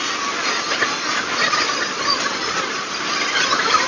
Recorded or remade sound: recorded